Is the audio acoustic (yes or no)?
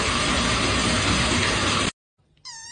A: yes